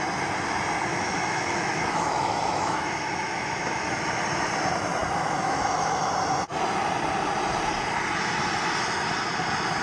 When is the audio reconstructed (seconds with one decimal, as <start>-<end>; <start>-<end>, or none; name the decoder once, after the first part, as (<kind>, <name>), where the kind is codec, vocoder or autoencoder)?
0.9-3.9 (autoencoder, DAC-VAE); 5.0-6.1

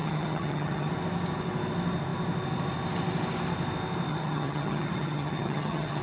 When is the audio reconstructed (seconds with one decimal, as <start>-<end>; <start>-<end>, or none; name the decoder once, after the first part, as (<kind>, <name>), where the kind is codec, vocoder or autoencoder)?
0.0-0.9 (vocoder, HiFi-GAN); 4.1-6.0

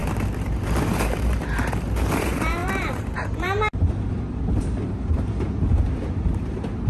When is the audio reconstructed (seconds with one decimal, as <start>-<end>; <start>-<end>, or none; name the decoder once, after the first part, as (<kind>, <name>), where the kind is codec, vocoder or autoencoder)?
0.0-6.9 (vocoder, BigVGAN v2)